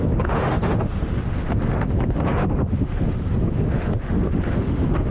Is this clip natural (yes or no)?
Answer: no